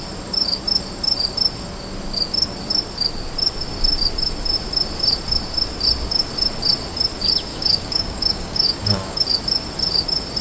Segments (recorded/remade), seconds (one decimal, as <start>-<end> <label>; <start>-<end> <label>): 0.0-7.5 recorded; 7.5-9.2 remade; 9.2-10.4 recorded